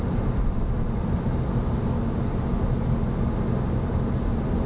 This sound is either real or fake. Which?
real